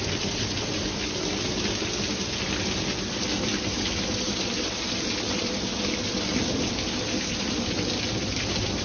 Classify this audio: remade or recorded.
recorded